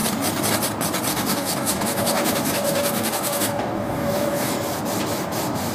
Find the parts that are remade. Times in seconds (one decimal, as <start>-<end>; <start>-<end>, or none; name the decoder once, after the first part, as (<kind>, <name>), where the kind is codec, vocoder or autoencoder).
1.1-4.5 (codec, DAC)